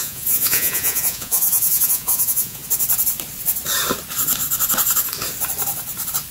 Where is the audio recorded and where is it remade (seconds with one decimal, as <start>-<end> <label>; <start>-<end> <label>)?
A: 0.0-2.6 remade; 2.6-6.3 recorded